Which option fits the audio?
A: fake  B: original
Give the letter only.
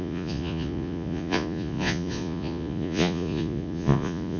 A